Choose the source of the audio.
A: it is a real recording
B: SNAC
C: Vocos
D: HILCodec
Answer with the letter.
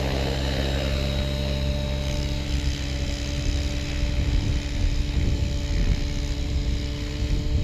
A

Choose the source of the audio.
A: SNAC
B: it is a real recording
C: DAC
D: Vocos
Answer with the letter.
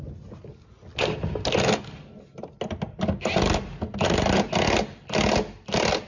B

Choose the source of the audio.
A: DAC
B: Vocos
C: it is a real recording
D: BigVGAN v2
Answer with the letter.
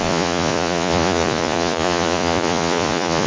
B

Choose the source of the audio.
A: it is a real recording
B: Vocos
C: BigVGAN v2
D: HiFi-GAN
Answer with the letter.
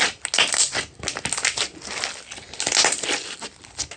A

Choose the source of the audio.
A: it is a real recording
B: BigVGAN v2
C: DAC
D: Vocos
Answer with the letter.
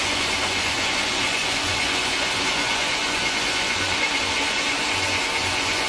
D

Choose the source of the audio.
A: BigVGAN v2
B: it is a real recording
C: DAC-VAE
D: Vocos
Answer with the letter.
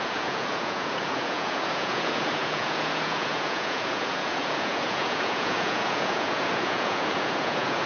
D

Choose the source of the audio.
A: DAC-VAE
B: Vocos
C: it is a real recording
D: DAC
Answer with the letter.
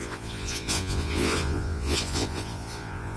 B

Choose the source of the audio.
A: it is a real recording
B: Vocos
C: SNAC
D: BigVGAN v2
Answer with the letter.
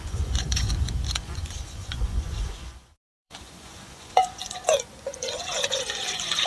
B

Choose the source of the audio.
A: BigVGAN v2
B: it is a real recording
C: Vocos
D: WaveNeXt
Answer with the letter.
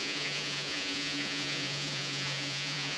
C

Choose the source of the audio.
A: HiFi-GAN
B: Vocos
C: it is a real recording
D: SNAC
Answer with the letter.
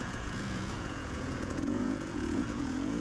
B